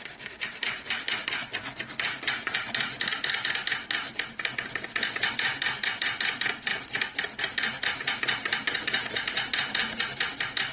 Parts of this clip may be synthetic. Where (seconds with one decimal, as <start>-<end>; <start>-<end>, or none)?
0.0-1.5; 2.2-6.7; 7.4-10.7